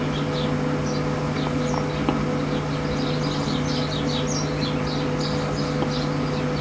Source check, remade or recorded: recorded